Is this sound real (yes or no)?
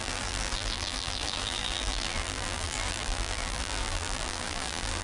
no